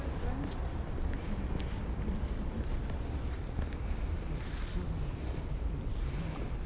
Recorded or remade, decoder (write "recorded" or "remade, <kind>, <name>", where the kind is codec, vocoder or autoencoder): recorded